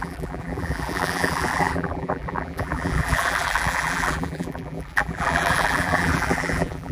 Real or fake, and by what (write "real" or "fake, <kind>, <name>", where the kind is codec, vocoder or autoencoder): fake, vocoder, BigVGAN v2